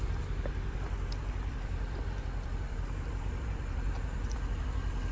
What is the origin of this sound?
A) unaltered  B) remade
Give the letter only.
B